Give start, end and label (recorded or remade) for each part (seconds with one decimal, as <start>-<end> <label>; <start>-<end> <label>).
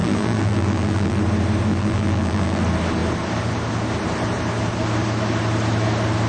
0.0-1.2 remade; 1.2-1.7 recorded; 1.7-2.6 remade; 2.6-6.3 recorded